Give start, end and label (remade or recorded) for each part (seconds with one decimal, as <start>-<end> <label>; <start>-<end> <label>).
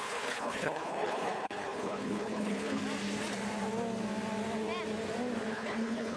0.0-2.8 remade; 2.8-5.5 recorded; 5.5-6.2 remade